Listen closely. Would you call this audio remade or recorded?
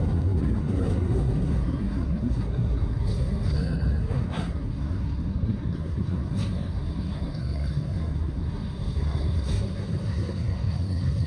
remade